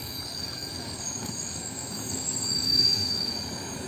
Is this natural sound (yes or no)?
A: no